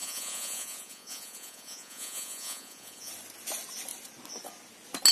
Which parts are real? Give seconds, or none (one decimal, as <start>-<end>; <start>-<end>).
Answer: 3.1-5.1